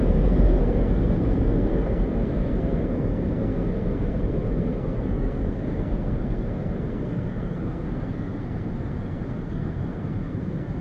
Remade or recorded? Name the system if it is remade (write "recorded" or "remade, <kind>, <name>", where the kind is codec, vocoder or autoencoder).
remade, codec, SNAC